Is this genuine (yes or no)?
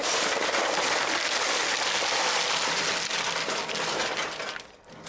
yes